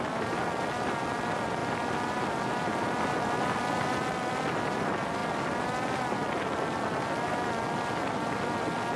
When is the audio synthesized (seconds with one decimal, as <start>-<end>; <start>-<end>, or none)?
none